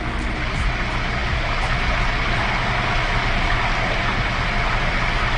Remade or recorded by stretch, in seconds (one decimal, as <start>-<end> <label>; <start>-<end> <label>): 0.0-5.4 recorded